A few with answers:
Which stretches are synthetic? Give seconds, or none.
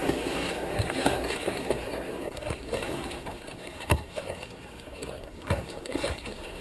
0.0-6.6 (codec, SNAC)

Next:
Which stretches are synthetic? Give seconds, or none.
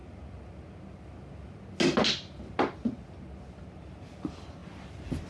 none